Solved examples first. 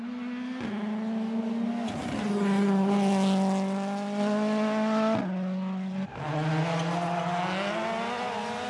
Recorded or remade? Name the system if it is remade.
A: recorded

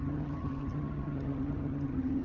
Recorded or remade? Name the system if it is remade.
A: remade, vocoder, HiFi-GAN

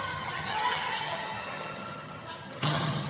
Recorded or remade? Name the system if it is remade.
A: remade, vocoder, HiFi-GAN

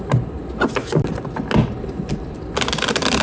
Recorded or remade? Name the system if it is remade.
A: recorded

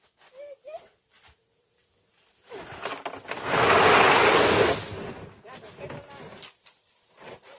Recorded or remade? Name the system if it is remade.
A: recorded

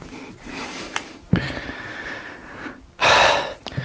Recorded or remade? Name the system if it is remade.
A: recorded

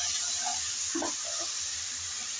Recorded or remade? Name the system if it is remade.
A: recorded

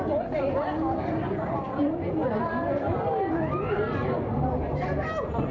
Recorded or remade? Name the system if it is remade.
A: recorded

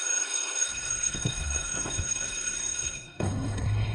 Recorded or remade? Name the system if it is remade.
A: remade, codec, SNAC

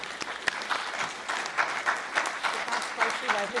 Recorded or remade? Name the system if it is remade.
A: recorded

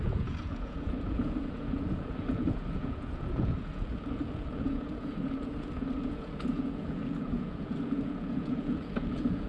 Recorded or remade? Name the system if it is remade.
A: remade, vocoder, Vocos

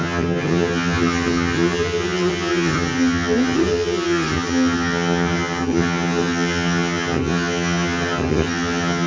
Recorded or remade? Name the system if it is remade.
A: remade, vocoder, HiFi-GAN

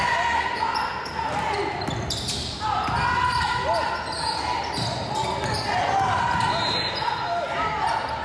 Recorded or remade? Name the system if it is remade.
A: recorded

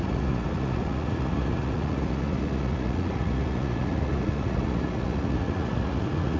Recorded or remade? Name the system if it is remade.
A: remade, vocoder, Vocos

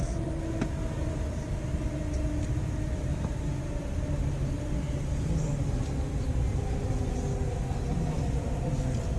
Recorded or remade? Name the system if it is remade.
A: recorded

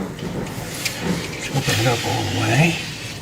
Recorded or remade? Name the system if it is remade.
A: recorded